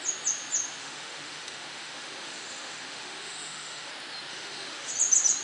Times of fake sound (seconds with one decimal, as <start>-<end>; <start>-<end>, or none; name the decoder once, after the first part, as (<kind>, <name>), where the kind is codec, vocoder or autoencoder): 0.8-3.9 (autoencoder, DAC-VAE); 4.3-4.9